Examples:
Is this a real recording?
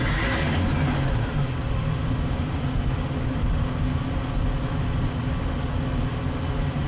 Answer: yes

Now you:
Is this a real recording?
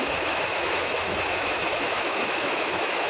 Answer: no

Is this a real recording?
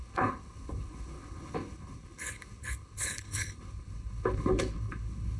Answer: no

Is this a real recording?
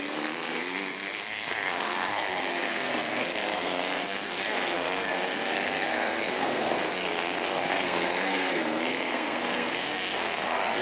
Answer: no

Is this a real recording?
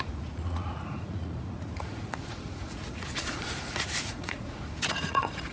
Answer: no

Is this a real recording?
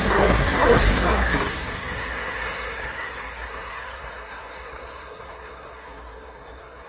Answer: no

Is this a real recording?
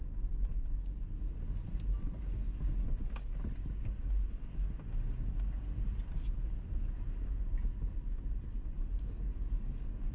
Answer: yes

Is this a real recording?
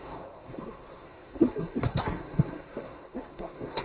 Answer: no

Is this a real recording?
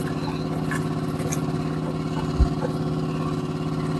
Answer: yes